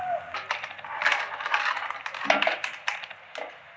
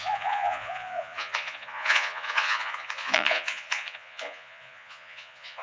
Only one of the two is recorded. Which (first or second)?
first